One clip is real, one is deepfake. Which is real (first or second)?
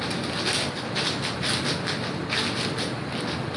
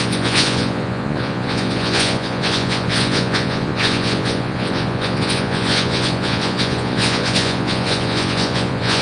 first